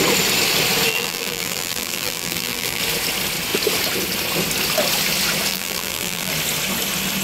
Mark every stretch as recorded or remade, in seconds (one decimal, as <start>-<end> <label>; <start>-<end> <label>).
0.0-0.9 recorded; 0.9-2.8 remade; 2.8-5.5 recorded; 5.5-6.3 remade; 6.3-7.2 recorded